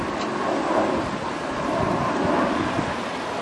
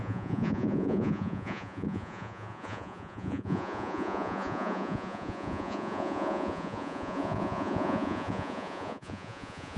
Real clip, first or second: first